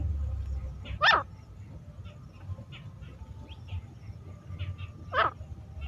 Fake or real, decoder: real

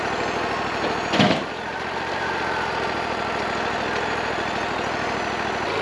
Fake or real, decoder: real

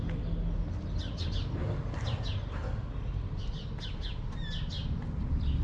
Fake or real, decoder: real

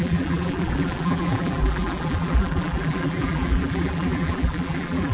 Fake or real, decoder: fake, vocoder, BigVGAN v2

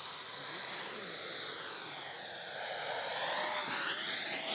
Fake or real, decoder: real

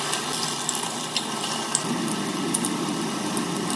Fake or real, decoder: real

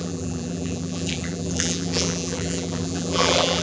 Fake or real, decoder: fake, vocoder, BigVGAN v2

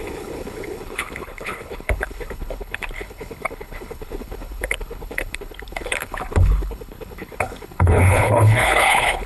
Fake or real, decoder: fake, codec, HILCodec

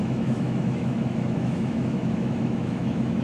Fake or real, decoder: fake, autoencoder, DAC-VAE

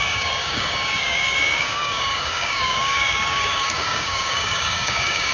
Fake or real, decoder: fake, codec, DAC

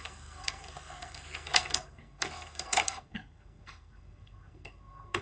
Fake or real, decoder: fake, codec, SNAC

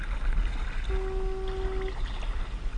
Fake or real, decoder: real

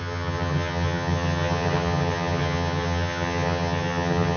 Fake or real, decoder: fake, vocoder, HiFi-GAN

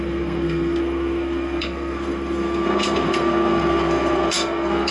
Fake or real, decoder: fake, codec, SNAC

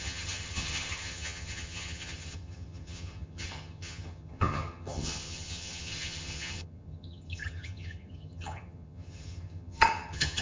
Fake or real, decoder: fake, vocoder, HiFi-GAN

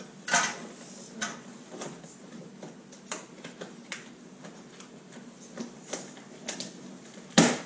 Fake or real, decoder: real